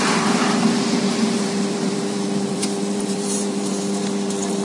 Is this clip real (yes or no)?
no